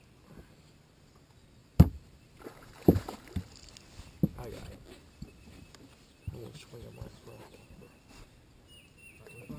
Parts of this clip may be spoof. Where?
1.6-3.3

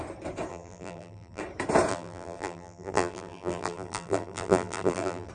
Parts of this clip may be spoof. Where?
0.5-1.4; 1.9-5.3

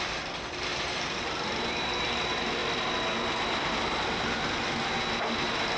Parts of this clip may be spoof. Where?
0.7-2.0

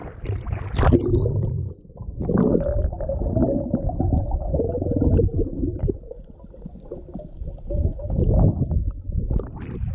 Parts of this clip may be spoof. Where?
0.0-0.6; 3.4-6.3

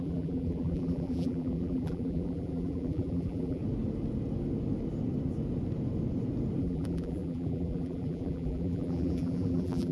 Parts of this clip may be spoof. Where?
0.0-3.6; 6.6-9.9

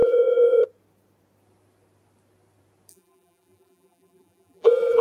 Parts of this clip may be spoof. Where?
0.0-0.6; 2.9-5.0

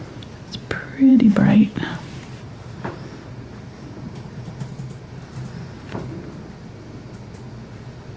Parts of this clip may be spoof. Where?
1.1-5.9